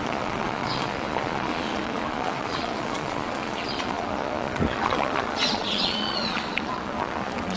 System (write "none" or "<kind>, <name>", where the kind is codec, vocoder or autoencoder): vocoder, Vocos